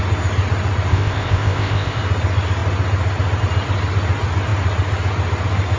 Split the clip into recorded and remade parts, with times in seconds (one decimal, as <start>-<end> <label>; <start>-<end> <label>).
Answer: 0.0-0.9 recorded; 0.9-2.0 remade; 2.0-5.8 recorded